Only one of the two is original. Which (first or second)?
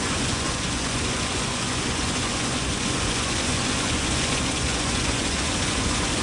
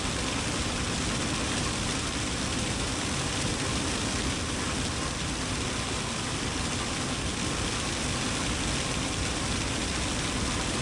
second